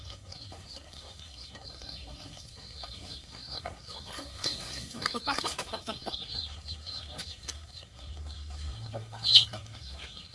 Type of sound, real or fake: fake